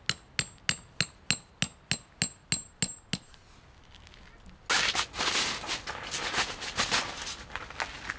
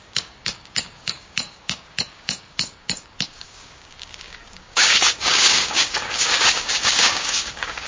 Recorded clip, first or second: first